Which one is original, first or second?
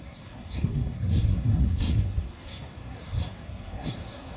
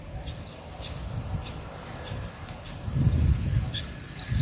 second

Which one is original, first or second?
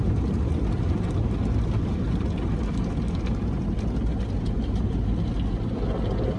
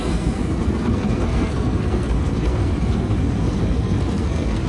first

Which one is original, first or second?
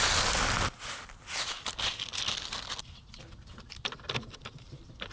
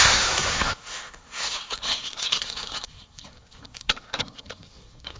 first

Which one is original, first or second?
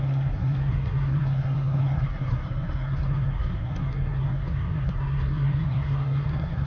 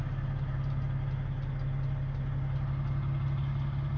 second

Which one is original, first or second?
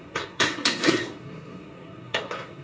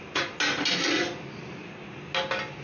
second